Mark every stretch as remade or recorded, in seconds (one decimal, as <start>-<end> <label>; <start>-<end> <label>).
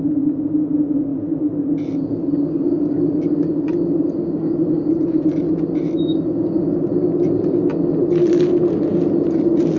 0.0-9.8 recorded